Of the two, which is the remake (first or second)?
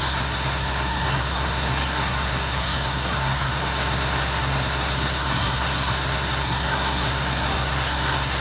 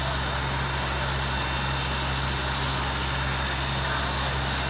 first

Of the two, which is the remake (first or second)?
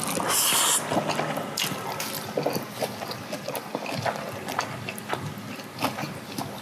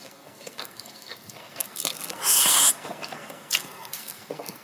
second